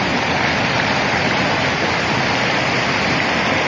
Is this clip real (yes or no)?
yes